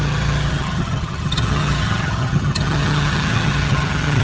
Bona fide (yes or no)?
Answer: no